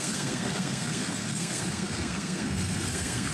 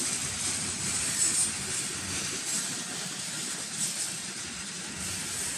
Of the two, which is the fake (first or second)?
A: first